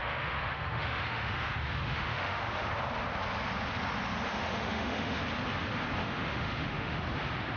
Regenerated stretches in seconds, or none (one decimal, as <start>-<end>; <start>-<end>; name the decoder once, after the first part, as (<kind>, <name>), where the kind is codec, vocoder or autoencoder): 0.0-2.7 (autoencoder, DAC-VAE); 4.3-5.2; 6.0-7.0